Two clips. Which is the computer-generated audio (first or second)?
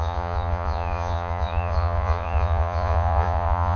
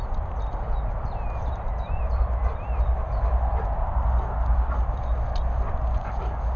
first